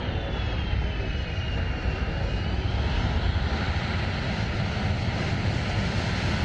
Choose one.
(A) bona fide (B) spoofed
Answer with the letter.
A